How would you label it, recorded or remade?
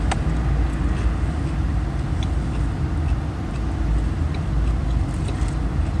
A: recorded